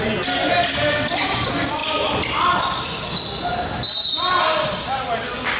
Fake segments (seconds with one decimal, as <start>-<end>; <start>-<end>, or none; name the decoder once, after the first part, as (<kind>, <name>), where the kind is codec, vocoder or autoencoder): none